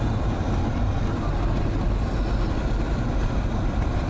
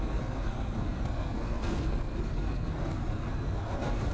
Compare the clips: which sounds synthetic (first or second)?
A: second